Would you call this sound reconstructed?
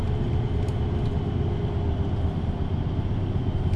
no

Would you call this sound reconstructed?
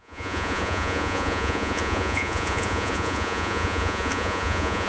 yes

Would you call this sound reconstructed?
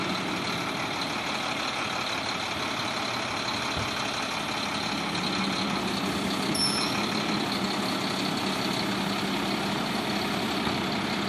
no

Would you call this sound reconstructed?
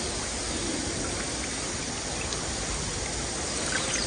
no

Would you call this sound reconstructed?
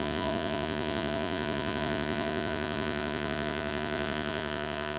yes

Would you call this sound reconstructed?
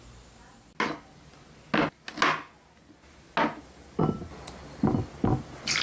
no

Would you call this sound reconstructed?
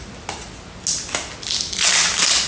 no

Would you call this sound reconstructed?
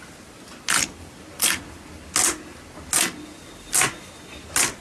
no